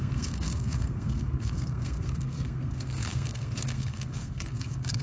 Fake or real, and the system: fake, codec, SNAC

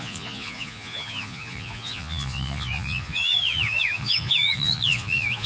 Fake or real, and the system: fake, vocoder, Vocos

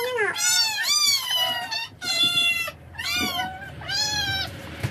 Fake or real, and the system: real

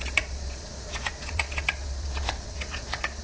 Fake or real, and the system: fake, vocoder, Vocos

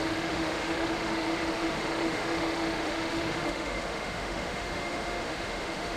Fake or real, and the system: fake, autoencoder, DAC-VAE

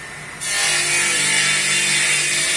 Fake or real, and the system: real